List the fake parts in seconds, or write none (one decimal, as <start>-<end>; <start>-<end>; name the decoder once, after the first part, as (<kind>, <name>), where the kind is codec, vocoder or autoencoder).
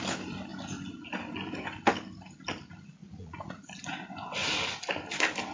3.0-3.6 (vocoder, Vocos)